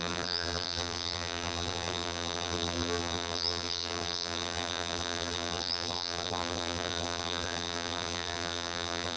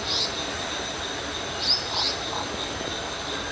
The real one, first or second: second